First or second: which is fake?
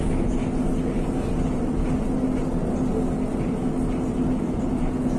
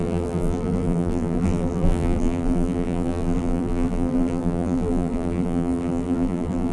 second